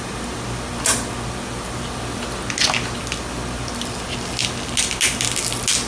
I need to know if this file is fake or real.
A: real